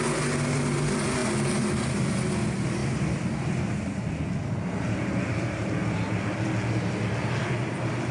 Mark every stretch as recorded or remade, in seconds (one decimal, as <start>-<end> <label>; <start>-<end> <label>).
0.0-8.1 recorded